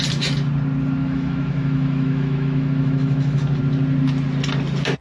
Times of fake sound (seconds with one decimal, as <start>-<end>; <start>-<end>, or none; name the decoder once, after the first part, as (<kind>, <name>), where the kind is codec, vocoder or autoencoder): 1.0-3.6 (autoencoder, DAC-VAE)